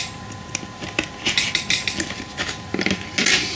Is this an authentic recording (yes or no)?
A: yes